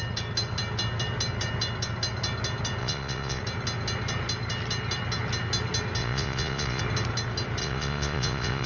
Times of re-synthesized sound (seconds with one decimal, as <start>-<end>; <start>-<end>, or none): 2.8-3.4; 6.0-6.8; 7.6-8.7